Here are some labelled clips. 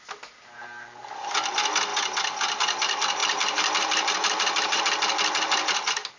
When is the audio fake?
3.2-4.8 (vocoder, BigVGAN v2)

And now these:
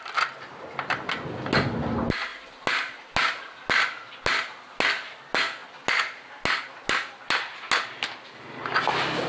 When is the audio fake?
none

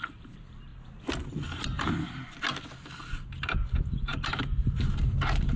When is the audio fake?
0.0-0.7 (vocoder, BigVGAN v2); 3.0-5.6

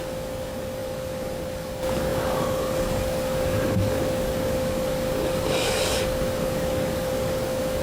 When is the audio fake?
0.0-7.8 (codec, DAC)

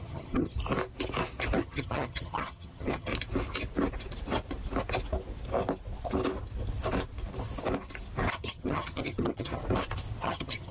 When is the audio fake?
0.0-0.5 (vocoder, HiFi-GAN); 1.6-3.1; 8.3-9.6; 10.2-10.7